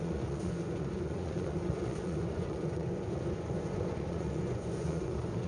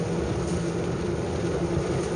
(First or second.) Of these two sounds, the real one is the second